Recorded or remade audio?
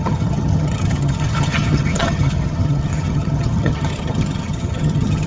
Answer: remade